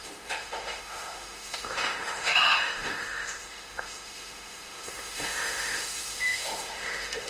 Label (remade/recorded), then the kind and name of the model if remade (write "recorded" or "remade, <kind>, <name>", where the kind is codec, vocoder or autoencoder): remade, autoencoder, DAC-VAE